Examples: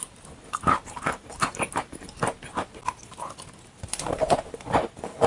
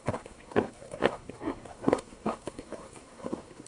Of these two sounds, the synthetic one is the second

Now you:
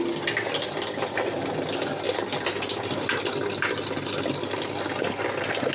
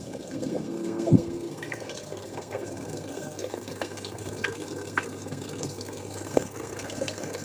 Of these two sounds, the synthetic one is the second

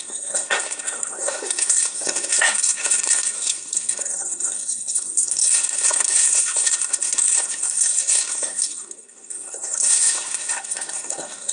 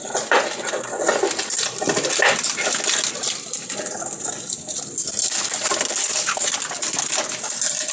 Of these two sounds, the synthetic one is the first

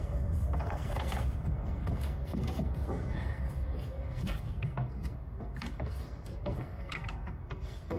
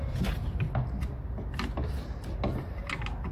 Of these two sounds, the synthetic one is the first